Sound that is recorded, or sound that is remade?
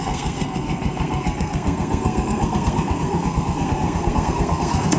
remade